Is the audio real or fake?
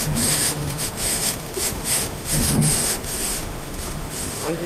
fake